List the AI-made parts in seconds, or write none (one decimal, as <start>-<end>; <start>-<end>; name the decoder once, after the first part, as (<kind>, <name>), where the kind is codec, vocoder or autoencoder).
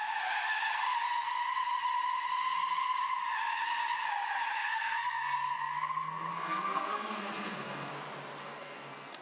4.6-7.9 (codec, SNAC); 8.4-9.2